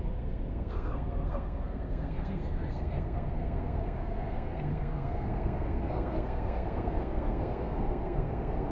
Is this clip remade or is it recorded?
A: remade